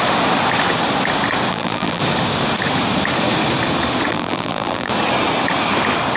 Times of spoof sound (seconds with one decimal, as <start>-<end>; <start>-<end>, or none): 1.5-2.0; 4.1-4.9

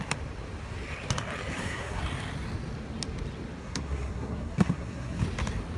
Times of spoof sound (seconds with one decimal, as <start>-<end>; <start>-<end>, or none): 1.5-2.0; 3.6-5.2

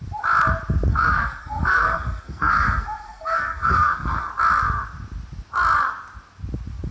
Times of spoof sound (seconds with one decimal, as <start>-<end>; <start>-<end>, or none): 0.9-4.3